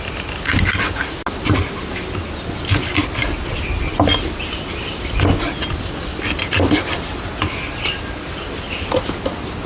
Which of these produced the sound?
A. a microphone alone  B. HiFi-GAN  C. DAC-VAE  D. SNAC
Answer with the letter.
A